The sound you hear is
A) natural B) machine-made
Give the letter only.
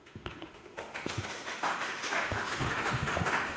B